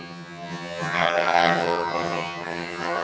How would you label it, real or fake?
fake